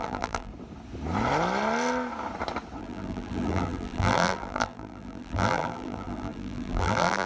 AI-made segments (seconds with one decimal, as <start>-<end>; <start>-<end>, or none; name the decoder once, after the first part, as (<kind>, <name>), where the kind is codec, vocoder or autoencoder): 0.0-0.5 (vocoder, BigVGAN v2); 2.8-7.3